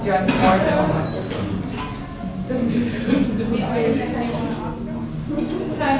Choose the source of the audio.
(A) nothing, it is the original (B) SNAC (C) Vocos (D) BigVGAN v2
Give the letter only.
A